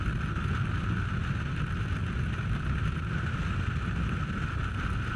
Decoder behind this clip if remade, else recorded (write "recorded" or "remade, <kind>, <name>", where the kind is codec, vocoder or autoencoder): recorded